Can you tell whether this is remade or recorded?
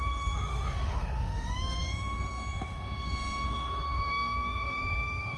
remade